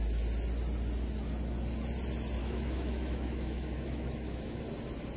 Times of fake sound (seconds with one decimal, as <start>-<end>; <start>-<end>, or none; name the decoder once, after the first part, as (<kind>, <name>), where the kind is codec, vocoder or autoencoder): 2.4-4.6 (autoencoder, DAC-VAE)